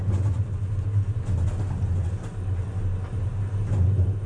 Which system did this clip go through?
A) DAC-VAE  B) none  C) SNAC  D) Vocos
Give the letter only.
B